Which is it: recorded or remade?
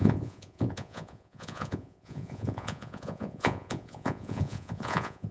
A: remade